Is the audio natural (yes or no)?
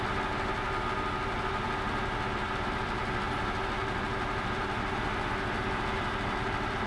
yes